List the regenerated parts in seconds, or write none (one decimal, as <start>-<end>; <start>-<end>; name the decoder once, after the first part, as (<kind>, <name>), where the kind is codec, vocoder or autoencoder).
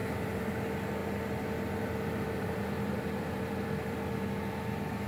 0.0-0.5 (vocoder, BigVGAN v2); 1.0-4.1